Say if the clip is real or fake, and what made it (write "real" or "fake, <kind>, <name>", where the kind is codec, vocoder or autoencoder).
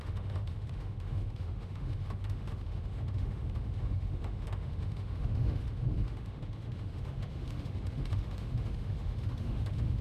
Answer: fake, autoencoder, DAC-VAE